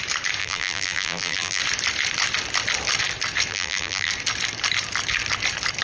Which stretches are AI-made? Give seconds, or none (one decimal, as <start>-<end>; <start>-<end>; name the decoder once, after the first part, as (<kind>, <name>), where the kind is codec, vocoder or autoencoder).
0.4-1.6 (vocoder, BigVGAN v2); 3.5-4.1